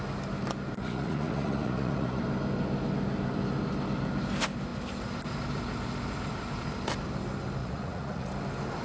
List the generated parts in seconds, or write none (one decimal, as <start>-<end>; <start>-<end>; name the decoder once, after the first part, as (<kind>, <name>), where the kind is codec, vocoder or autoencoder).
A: 0.8-2.2 (vocoder, Vocos); 7.6-8.3